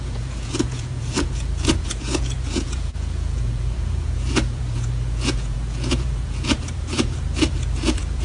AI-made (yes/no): yes